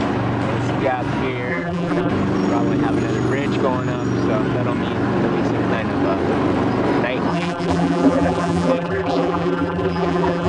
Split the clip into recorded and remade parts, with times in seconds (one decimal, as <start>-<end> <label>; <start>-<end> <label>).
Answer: 0.0-1.5 recorded; 1.5-2.1 remade; 2.1-7.3 recorded; 7.3-10.5 remade